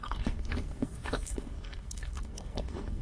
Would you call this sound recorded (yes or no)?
no